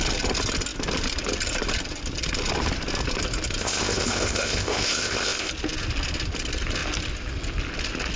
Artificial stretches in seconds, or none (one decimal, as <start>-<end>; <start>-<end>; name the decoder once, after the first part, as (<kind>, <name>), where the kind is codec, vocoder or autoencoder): 3.6-5.5 (codec, ZipCodec)